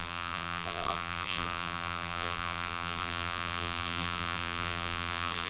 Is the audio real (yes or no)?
no